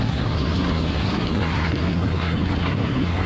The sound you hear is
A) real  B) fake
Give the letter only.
B